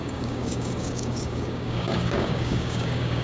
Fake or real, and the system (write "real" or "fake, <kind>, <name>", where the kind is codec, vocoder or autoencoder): fake, codec, DAC